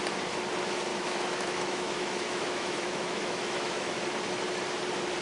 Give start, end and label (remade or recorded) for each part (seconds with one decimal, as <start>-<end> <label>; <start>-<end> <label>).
0.0-0.9 recorded; 0.9-4.0 remade; 4.0-5.2 recorded